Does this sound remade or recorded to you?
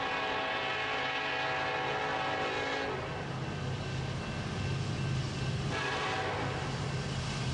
recorded